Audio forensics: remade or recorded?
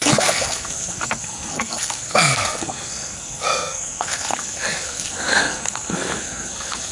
remade